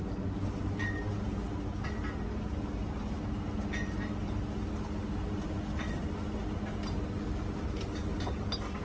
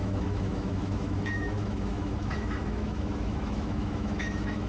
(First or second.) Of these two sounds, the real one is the first